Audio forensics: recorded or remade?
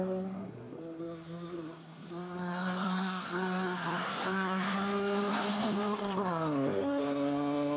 remade